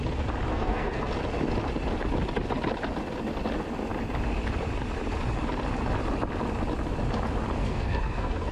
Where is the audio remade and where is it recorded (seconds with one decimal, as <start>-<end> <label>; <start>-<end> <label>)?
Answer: 0.0-0.5 recorded; 0.5-1.1 remade; 1.1-7.6 recorded; 7.6-8.5 remade